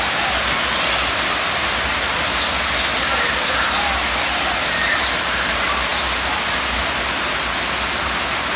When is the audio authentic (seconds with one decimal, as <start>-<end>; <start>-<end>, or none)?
0.0-8.6